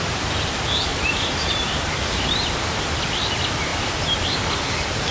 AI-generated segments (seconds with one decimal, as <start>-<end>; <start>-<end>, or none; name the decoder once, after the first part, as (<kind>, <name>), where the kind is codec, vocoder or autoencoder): 0.0-0.9 (vocoder, BigVGAN v2); 2.0-3.7

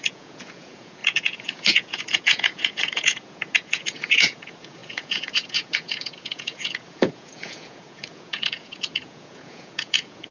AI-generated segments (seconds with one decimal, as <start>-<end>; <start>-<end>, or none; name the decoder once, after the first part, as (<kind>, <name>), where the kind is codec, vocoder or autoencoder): 0.0-10.3 (vocoder, Vocos)

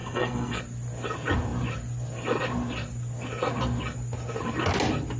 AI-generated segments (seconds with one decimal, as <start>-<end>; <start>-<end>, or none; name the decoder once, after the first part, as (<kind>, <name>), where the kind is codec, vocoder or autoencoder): 0.0-0.6 (codec, SNAC)